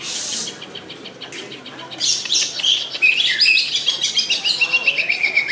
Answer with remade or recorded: recorded